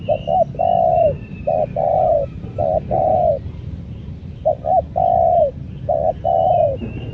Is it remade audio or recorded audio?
recorded